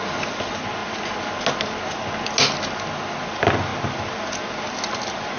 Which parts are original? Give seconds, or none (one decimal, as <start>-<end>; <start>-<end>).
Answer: 0.0-5.4